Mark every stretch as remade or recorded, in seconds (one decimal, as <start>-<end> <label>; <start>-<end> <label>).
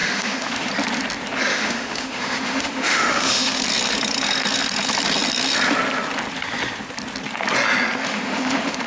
0.0-0.7 remade; 0.7-1.5 recorded; 1.5-3.6 remade; 3.6-8.0 recorded; 8.0-8.9 remade